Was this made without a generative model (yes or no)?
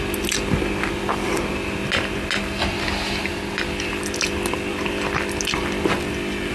yes